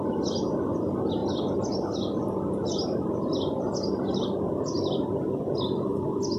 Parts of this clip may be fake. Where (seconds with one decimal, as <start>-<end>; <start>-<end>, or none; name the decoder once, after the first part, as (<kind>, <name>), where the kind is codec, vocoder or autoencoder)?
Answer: none